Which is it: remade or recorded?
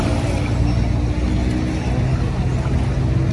recorded